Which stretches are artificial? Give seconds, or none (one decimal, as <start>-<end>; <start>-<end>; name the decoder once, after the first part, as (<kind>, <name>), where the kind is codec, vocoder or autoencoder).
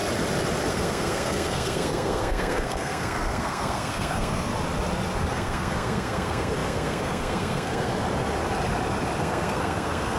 0.7-4.5 (codec, SNAC); 5.3-7.9; 9.2-10.2